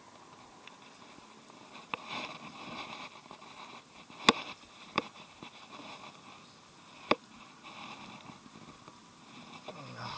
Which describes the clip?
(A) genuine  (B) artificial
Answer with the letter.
A